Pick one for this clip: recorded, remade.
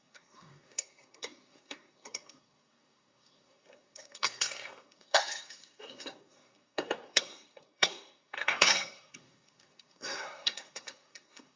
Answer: remade